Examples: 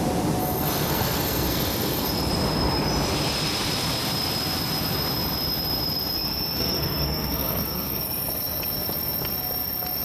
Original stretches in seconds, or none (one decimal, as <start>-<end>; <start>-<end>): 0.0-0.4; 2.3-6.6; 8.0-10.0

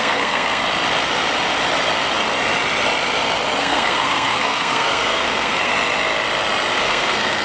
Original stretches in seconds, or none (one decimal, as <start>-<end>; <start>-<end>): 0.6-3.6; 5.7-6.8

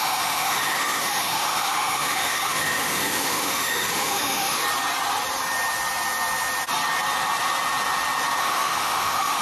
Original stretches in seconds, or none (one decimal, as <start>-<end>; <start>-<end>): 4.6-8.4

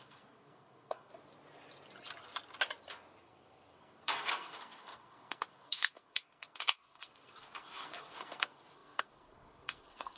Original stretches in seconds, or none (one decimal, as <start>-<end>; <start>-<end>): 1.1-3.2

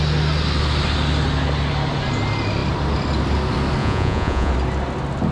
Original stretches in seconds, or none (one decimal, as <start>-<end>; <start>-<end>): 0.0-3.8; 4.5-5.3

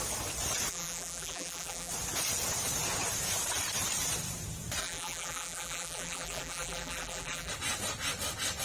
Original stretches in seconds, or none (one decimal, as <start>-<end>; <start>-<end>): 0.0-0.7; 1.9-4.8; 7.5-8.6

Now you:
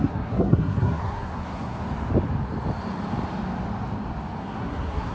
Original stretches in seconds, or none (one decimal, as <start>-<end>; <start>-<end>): 1.8-4.4

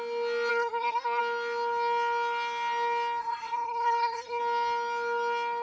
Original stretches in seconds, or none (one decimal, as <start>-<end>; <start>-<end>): 0.0-0.5; 1.2-3.2; 4.4-5.6